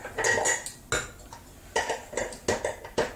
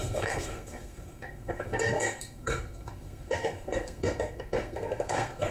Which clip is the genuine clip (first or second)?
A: first